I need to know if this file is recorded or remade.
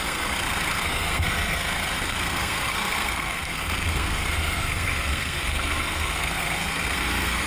remade